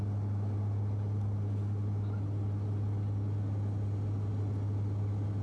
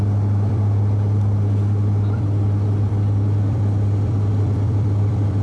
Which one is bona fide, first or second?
first